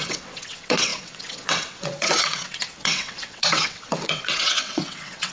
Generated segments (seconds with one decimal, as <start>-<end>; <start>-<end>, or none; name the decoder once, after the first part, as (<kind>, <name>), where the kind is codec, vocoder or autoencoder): 0.0-5.3 (vocoder, WaveNeXt)